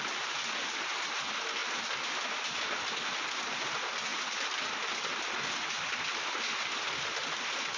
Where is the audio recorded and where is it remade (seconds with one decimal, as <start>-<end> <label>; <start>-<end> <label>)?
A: 0.0-7.8 recorded

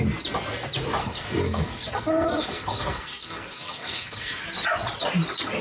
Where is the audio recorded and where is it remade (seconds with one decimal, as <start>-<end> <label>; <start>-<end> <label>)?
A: 0.0-1.0 recorded; 1.0-4.4 remade; 4.4-5.6 recorded

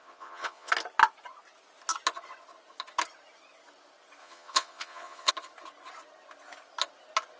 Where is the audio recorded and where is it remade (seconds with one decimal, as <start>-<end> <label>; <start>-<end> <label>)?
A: 0.0-0.7 remade; 0.7-4.2 recorded; 4.2-5.3 remade; 5.3-7.4 recorded

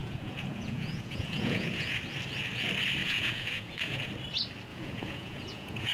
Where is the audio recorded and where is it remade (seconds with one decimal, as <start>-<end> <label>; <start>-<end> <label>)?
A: 0.0-2.0 remade; 2.0-3.0 recorded; 3.0-4.1 remade; 4.1-4.7 recorded; 4.7-5.9 remade

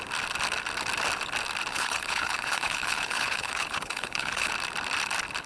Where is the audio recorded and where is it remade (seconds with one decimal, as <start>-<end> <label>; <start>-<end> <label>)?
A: 0.0-1.7 recorded; 1.7-4.5 remade; 4.5-5.5 recorded

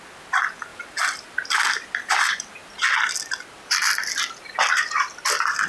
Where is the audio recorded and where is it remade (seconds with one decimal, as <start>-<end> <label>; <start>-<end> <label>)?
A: 0.0-5.7 recorded

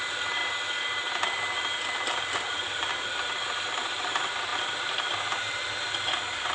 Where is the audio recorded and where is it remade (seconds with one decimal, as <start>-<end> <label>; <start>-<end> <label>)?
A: 0.0-0.4 remade; 0.4-2.5 recorded; 2.5-2.9 remade; 2.9-3.7 recorded; 3.7-6.5 remade

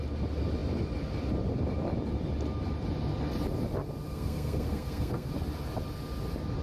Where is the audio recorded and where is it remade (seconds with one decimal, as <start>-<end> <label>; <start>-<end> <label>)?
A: 0.0-4.1 recorded; 4.1-5.3 remade; 5.3-6.6 recorded